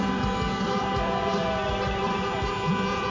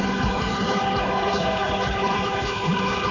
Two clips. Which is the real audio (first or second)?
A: first